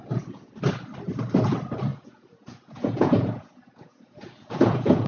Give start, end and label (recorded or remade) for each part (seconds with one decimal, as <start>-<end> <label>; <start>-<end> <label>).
0.0-0.5 remade; 0.5-1.9 recorded; 1.9-5.1 remade

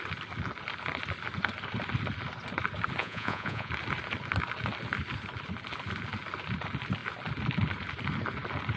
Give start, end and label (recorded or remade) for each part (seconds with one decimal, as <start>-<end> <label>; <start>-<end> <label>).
0.0-3.0 recorded; 3.0-3.7 remade; 3.7-8.8 recorded